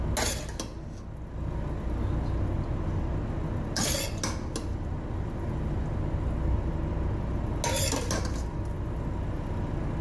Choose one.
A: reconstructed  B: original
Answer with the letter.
B